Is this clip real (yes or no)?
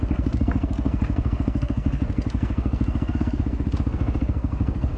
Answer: no